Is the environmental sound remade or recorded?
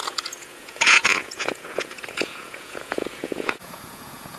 remade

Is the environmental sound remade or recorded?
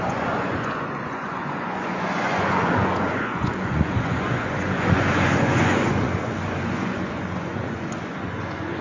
remade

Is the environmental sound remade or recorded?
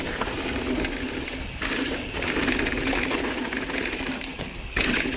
recorded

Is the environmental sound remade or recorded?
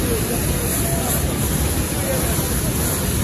recorded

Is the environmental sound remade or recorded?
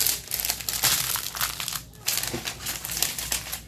recorded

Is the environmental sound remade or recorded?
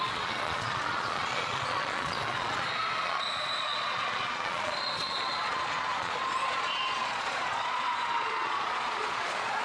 remade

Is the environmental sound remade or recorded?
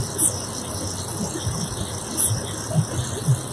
recorded